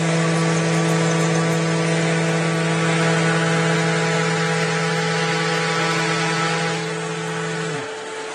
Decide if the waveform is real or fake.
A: real